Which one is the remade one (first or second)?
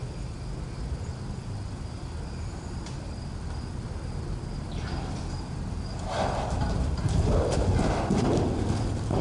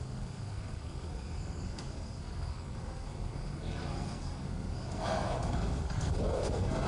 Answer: second